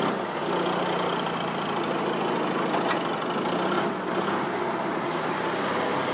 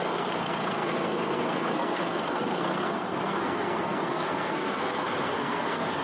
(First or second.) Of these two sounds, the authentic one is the first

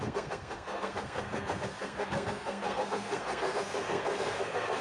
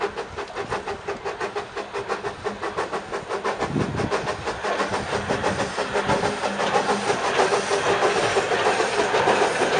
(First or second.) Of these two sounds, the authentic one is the second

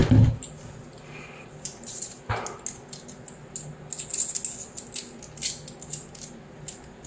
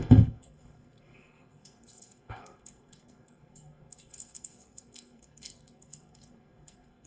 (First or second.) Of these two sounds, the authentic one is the first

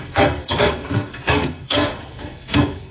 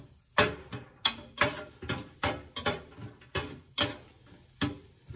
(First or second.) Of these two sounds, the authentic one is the second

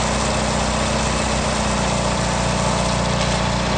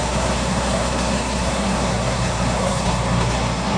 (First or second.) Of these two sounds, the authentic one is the first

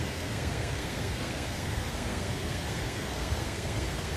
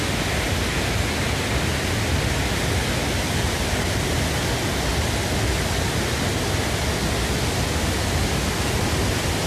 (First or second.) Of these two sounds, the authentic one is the second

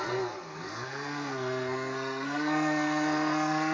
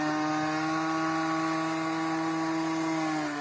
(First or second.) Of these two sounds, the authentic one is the second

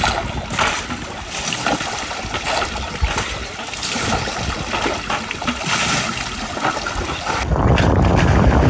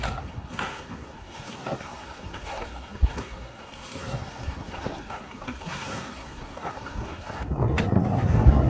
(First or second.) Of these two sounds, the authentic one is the first